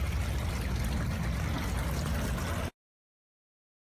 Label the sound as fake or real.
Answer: real